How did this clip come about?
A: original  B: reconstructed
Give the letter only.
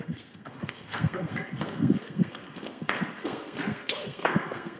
B